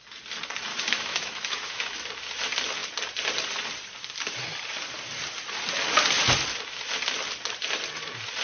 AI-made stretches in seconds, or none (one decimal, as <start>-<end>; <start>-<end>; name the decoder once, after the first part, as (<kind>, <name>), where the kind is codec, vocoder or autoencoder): 0.7-2.0 (autoencoder, DAC-VAE)